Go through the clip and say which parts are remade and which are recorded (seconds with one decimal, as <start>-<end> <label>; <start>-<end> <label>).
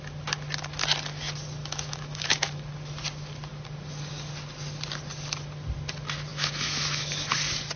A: 0.0-1.6 recorded; 1.6-2.6 remade; 2.6-6.3 recorded; 6.3-7.3 remade; 7.3-7.8 recorded